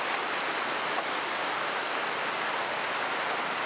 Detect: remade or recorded recorded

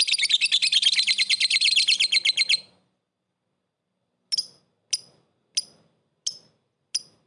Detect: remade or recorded recorded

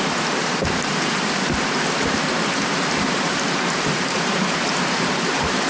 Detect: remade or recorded remade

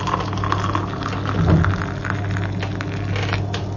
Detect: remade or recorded recorded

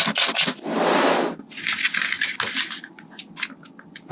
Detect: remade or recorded recorded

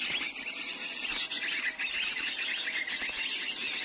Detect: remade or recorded recorded